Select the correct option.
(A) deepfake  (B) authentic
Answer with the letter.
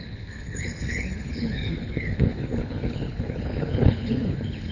A